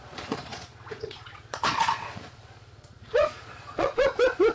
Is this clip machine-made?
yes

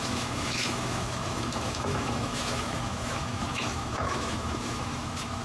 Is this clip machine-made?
yes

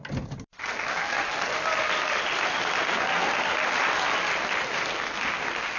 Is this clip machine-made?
no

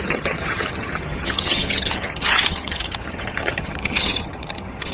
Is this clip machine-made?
yes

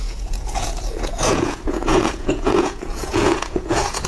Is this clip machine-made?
yes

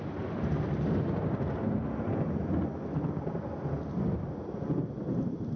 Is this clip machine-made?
no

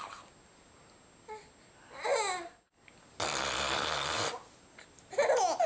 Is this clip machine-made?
no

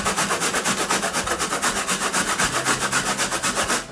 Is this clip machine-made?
no